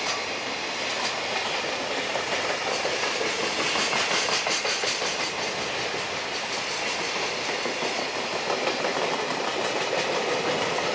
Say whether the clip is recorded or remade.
recorded